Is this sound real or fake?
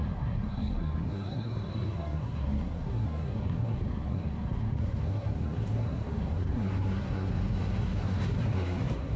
fake